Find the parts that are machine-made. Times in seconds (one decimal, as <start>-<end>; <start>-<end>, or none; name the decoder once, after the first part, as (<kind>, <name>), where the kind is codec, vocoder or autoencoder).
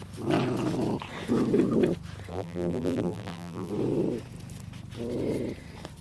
2.3-3.7 (vocoder, BigVGAN v2)